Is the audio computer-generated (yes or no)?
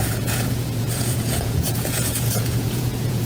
yes